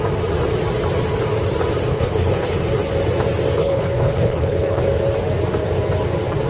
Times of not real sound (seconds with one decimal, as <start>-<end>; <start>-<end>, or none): 1.9-2.6; 3.6-4.8